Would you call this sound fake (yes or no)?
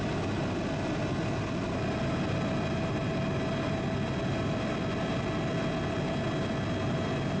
no